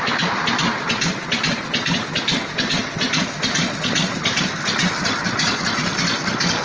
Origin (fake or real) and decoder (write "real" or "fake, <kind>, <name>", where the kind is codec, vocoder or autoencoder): real